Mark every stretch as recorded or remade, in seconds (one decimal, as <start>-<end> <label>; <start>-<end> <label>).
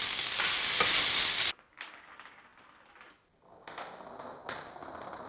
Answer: 0.0-5.3 recorded